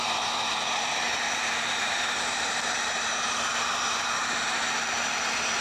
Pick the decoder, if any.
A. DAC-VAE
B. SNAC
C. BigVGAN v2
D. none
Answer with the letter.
C